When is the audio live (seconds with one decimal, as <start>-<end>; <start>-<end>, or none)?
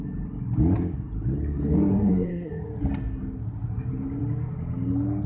0.0-1.9; 2.5-5.3